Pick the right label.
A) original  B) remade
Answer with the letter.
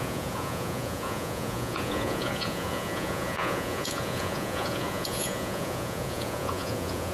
B